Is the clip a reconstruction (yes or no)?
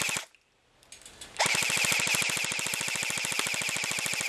no